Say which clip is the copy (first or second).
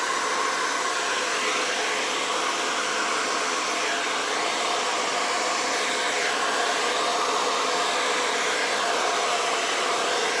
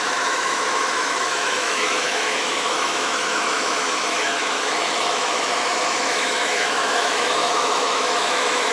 second